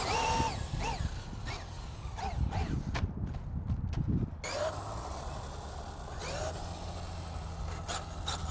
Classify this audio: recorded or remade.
recorded